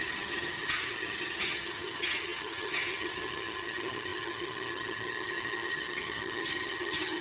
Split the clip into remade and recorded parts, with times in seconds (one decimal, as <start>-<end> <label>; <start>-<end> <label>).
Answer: 0.0-7.2 remade